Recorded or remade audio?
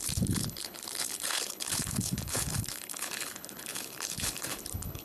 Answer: remade